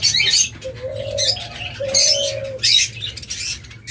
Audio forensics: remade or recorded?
recorded